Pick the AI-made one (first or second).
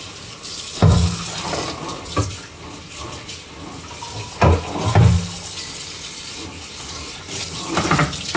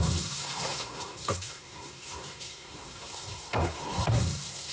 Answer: second